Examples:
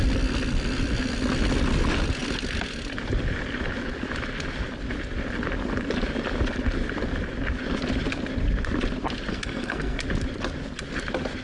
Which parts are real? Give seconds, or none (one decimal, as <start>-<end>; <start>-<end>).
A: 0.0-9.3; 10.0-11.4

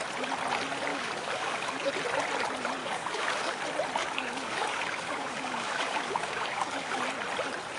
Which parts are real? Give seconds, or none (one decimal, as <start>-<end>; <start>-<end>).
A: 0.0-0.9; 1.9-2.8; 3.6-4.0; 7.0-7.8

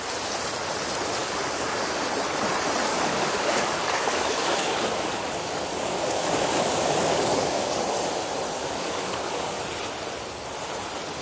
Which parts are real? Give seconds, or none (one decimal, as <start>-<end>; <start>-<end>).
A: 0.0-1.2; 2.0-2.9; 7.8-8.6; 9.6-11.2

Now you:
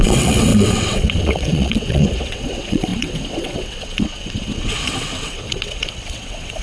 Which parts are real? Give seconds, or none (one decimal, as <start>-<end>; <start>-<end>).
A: none